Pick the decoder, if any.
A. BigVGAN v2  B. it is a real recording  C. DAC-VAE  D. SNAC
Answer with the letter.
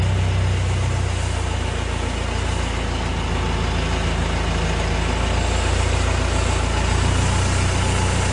B